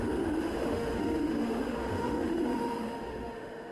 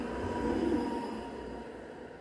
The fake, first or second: first